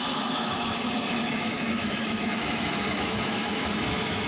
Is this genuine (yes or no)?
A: no